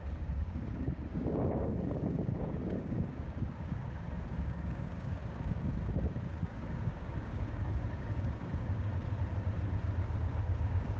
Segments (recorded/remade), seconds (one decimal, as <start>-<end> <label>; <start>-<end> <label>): 0.0-8.9 remade; 8.9-10.2 recorded; 10.2-11.0 remade